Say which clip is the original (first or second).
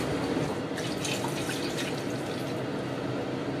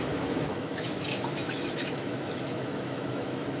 first